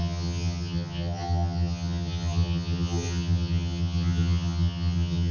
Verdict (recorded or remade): remade